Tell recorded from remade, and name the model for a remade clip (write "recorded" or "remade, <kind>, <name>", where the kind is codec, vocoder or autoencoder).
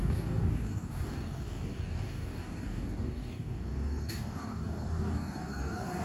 remade, codec, DAC